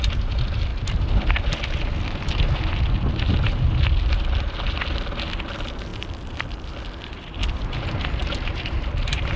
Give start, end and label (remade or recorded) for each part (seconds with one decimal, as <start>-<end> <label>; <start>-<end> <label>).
0.0-9.4 recorded